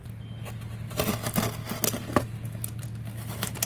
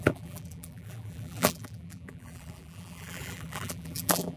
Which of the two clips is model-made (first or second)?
second